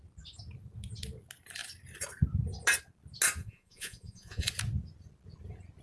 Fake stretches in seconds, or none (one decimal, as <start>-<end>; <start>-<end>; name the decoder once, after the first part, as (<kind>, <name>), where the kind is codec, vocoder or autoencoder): 3.4-4.5 (vocoder, Vocos)